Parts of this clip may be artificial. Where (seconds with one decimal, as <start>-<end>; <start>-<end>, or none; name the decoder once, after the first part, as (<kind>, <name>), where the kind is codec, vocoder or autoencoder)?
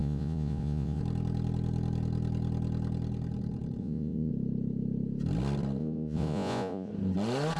0.0-1.0 (vocoder, Vocos); 3.8-4.3; 5.8-6.9